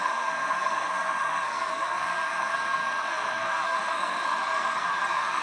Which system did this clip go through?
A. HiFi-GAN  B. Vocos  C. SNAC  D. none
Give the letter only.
C